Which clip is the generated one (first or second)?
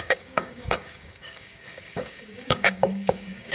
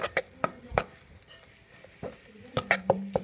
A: first